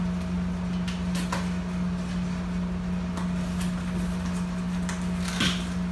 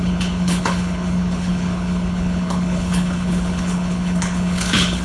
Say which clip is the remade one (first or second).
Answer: second